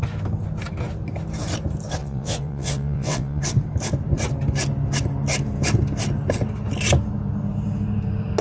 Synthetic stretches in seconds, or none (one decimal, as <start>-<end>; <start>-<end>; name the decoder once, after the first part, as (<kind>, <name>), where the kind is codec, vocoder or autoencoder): 2.0-3.4 (vocoder, WaveNeXt)